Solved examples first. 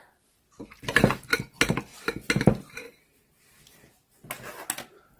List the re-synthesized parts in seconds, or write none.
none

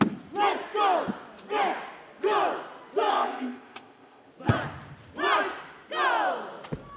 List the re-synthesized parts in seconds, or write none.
3.1-4.3 (codec, ZipCodec)

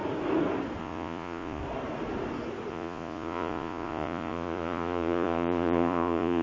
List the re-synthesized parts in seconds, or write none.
0.8-1.6 (vocoder, Vocos); 2.7-6.4

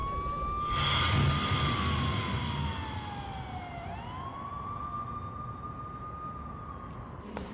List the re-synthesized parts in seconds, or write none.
none

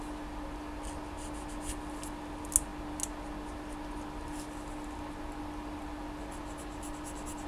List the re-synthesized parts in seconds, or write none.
none

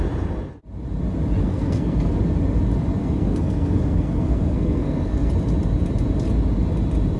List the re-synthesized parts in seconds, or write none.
1.4-2.2 (codec, SNAC); 3.0-5.3